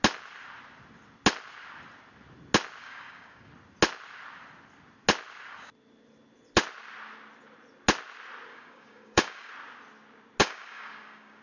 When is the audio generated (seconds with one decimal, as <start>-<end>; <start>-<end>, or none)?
2.8-3.5; 8.5-9.5; 10.4-11.4